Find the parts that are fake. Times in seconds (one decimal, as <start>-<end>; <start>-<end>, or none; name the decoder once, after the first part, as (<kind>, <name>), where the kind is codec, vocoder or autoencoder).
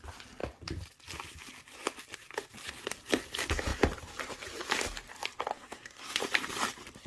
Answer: 5.5-6.2 (codec, SNAC)